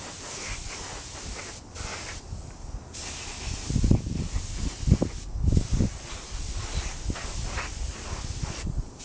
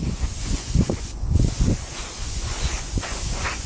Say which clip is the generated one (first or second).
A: second